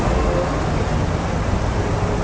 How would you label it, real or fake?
real